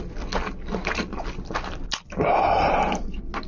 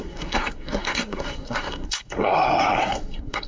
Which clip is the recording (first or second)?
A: first